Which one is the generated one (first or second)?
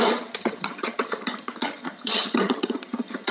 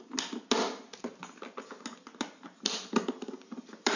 first